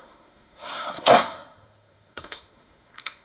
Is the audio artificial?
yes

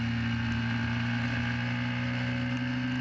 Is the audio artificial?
no